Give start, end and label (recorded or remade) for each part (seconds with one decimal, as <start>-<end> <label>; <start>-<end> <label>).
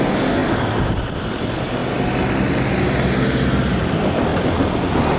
0.0-5.2 recorded